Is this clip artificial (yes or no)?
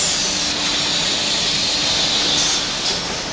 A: no